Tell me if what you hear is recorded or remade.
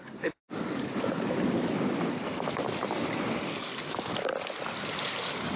recorded